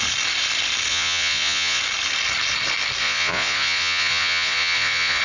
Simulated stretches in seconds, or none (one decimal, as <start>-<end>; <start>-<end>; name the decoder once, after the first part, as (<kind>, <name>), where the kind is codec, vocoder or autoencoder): 0.9-1.8 (vocoder, Vocos); 3.0-5.2